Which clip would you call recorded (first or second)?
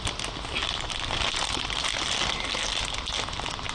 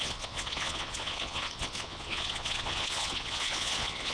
first